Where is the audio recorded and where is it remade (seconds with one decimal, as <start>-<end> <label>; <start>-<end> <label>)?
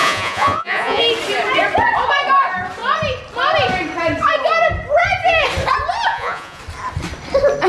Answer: 0.0-1.0 remade; 1.0-6.1 recorded; 6.1-6.6 remade; 6.6-7.7 recorded